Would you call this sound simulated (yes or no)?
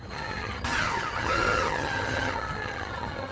yes